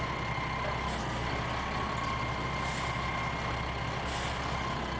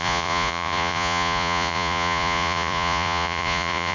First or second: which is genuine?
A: first